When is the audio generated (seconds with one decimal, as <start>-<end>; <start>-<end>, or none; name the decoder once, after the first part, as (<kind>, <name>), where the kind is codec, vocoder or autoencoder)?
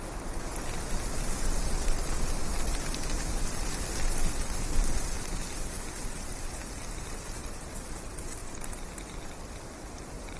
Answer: none